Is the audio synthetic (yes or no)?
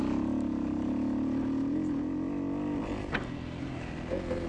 no